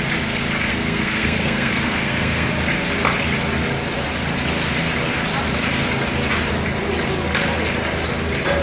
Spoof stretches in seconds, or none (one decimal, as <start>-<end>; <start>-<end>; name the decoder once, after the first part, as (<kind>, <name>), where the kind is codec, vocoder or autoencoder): 0.7-2.5 (codec, SNAC)